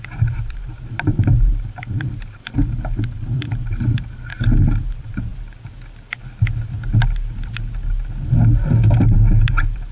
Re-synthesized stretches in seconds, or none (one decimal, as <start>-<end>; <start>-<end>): 0.0-4.3; 4.8-5.3; 9.0-9.9